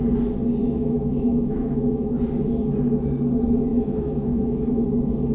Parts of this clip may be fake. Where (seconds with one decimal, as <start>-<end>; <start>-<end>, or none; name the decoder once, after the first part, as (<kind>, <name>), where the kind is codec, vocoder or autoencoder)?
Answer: 0.6-2.2 (autoencoder, DAC-VAE); 3.7-4.8